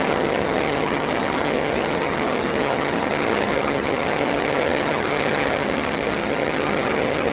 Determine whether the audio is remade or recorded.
remade